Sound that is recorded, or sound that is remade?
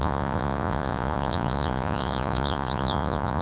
remade